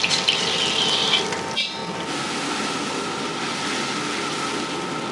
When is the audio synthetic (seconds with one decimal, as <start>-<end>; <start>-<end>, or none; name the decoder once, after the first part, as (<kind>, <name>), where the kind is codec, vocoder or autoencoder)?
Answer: none